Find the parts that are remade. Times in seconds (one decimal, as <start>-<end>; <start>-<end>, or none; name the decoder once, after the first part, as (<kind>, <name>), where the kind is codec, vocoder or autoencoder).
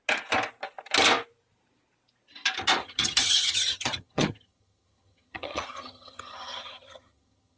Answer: 2.8-7.6 (vocoder, HiFi-GAN)